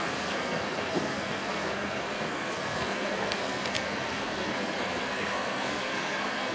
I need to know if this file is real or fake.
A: fake